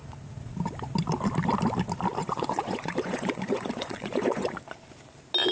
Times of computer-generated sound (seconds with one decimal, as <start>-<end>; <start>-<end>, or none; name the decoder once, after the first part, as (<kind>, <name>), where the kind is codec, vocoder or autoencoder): 2.2-4.6 (vocoder, Vocos)